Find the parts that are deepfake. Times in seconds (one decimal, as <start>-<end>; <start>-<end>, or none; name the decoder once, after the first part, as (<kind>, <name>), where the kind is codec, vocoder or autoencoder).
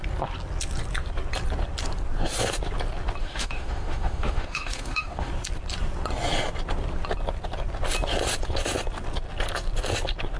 3.2-5.3 (autoencoder, DAC-VAE)